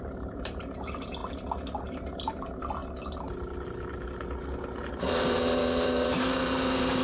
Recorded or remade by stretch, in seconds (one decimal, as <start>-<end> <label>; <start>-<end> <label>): 0.0-1.2 remade; 1.2-1.8 recorded; 1.8-2.8 remade; 2.8-4.9 recorded; 4.9-7.0 remade